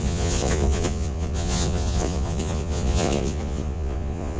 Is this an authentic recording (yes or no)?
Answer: no